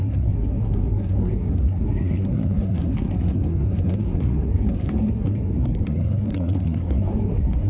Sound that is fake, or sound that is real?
fake